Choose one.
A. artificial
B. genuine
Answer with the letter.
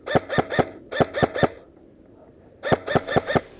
B